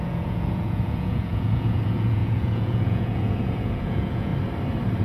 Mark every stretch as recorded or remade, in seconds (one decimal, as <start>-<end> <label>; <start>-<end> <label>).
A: 0.0-4.3 remade; 4.3-5.0 recorded